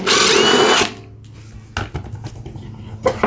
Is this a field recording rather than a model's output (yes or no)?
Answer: yes